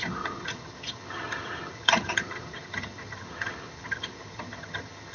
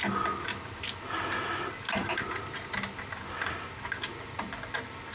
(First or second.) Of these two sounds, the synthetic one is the first